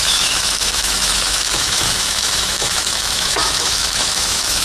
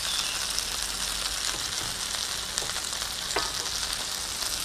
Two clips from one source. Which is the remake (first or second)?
first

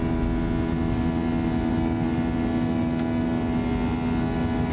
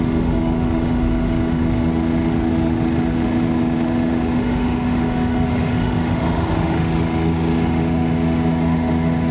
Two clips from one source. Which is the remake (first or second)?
second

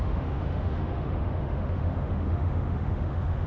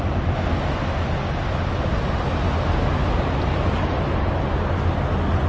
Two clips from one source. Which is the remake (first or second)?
first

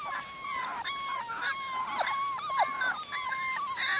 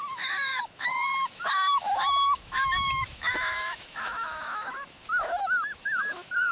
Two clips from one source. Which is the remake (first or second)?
second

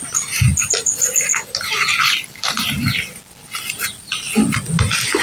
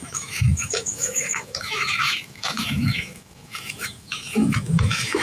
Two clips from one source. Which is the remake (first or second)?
second